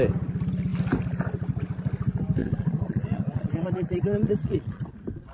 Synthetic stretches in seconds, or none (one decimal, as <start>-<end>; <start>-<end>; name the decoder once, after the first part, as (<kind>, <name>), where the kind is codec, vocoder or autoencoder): 2.4-4.8 (vocoder, Vocos)